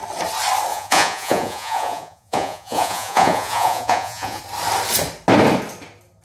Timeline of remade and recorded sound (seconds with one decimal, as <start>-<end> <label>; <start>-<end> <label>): 0.0-0.7 recorded; 0.7-4.4 remade; 4.4-6.2 recorded